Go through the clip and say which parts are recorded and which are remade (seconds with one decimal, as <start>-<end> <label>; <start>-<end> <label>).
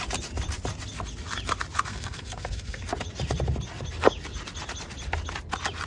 0.0-1.9 recorded; 1.9-2.8 remade; 2.8-5.9 recorded